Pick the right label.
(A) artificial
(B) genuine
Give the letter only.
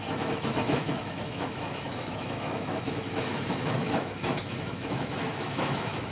A